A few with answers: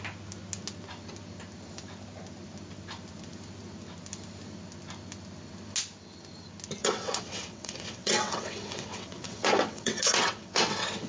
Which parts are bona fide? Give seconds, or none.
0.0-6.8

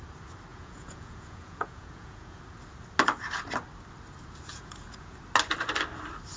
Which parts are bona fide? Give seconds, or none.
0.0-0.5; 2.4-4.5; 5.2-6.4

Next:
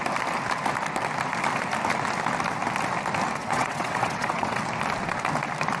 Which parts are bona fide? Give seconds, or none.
0.0-3.4; 4.6-5.8